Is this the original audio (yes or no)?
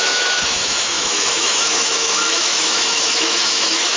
no